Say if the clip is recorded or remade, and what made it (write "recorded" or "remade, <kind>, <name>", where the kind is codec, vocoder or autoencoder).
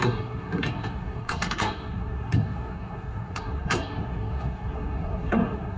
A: remade, codec, SNAC